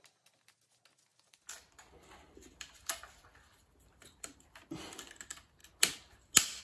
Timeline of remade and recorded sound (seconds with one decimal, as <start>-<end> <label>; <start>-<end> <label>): 0.0-1.1 recorded; 1.1-5.1 remade; 5.1-6.6 recorded

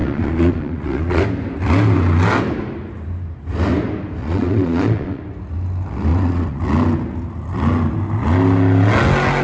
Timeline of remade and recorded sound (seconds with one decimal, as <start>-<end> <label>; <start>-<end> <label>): 0.0-1.2 remade; 1.2-4.2 recorded; 4.2-5.2 remade; 5.2-6.1 recorded; 6.1-6.6 remade; 6.6-9.4 recorded

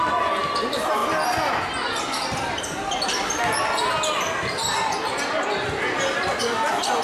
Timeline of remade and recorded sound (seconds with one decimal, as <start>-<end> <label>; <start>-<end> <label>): 0.0-7.0 recorded

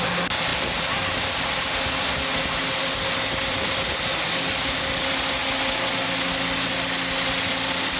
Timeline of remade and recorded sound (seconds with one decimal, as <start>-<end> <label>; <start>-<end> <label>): 0.0-8.0 recorded

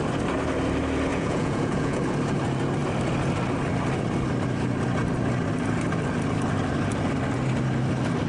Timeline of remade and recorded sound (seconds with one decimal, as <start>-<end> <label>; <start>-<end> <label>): 0.0-1.1 recorded; 1.1-2.0 remade; 2.0-8.3 recorded

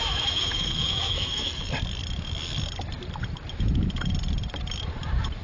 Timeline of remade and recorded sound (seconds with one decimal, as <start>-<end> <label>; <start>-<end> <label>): 0.0-1.6 remade; 1.6-5.4 recorded

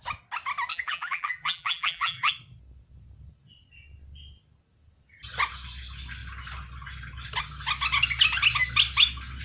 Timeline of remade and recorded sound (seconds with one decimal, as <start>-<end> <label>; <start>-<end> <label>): 0.0-0.7 recorded; 0.7-2.3 remade; 2.3-9.4 recorded